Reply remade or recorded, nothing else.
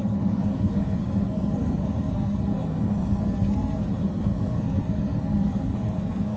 remade